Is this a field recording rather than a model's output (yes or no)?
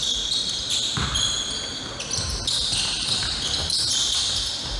yes